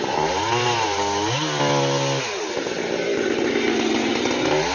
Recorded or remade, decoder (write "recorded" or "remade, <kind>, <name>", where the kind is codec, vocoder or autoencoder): recorded